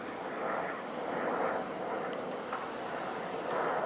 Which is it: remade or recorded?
remade